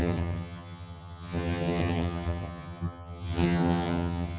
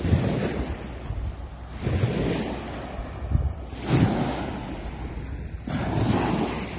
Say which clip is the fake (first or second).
first